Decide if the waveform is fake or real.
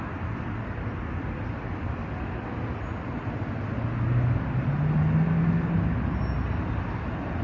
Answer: real